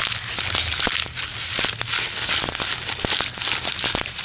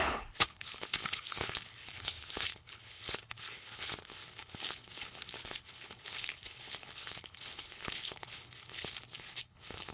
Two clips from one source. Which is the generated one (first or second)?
second